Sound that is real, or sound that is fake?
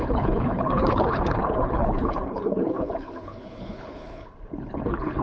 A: fake